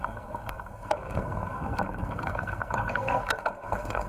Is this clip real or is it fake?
fake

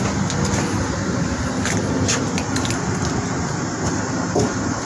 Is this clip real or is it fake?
real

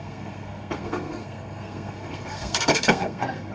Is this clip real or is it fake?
fake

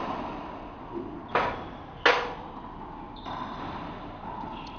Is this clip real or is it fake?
real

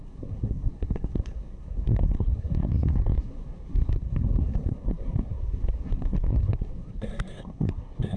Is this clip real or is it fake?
fake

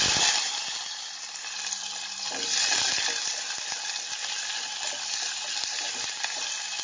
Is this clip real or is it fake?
real